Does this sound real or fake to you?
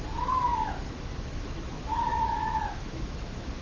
fake